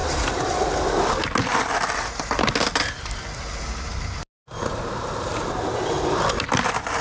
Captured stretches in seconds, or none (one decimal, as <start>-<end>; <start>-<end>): 0.0-7.0